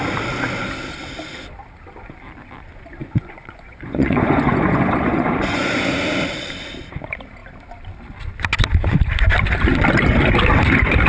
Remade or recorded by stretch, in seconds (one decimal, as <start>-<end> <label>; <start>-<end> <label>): 0.0-3.0 recorded; 3.0-5.9 remade; 5.9-11.1 recorded